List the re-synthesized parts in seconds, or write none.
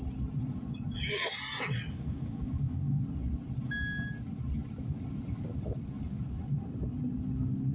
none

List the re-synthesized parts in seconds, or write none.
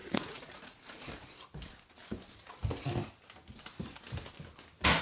0.0-0.8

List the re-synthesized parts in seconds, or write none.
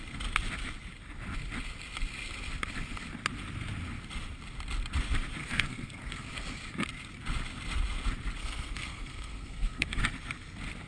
5.4-6.3; 8.4-10.0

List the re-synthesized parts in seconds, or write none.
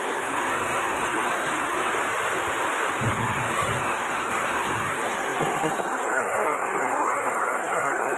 0.0-1.9; 3.1-8.2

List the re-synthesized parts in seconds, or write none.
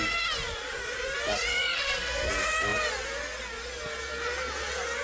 1.5-2.3